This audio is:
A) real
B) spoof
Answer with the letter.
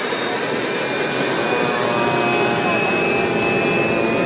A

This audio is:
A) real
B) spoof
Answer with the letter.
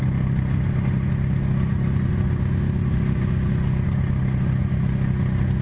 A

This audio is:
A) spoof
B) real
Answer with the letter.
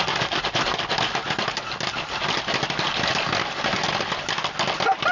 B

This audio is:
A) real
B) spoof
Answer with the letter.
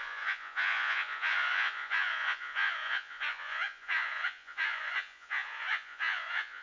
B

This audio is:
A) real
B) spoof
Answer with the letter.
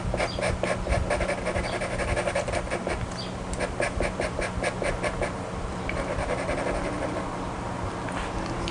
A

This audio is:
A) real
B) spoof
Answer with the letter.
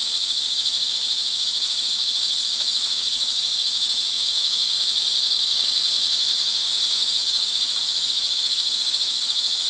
B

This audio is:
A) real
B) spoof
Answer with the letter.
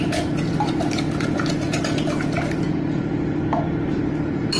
B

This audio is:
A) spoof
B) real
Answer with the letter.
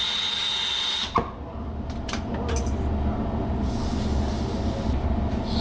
B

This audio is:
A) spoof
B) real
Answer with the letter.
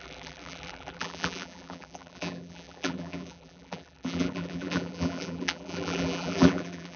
A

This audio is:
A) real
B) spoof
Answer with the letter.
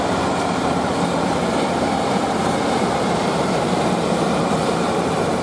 B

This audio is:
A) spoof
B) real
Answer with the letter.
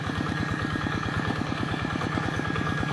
A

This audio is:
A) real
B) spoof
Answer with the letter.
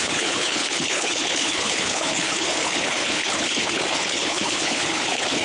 B